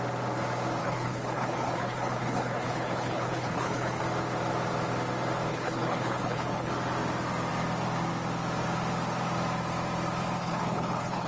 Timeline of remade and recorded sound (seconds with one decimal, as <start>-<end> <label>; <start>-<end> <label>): 0.0-0.8 recorded; 0.8-4.0 remade; 4.0-5.5 recorded; 5.5-6.7 remade; 6.7-10.4 recorded; 10.4-11.3 remade